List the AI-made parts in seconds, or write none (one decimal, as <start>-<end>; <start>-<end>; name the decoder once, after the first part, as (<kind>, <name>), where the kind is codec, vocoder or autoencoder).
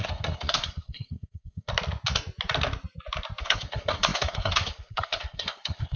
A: 0.0-1.7 (codec, SNAC); 3.4-6.0